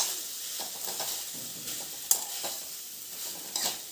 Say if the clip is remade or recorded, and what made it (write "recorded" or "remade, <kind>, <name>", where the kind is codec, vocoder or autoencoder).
recorded